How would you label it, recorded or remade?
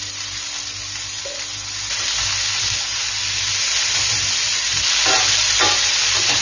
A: recorded